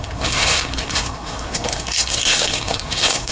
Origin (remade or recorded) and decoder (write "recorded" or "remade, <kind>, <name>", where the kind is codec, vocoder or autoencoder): remade, codec, SNAC